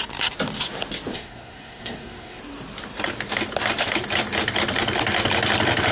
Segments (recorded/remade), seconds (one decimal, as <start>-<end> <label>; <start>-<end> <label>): 0.0-1.1 recorded; 1.1-2.4 remade; 2.4-5.9 recorded